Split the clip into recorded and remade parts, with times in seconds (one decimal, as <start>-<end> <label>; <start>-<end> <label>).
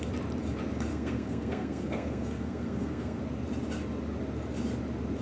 0.0-0.9 recorded; 0.9-3.2 remade; 3.2-5.2 recorded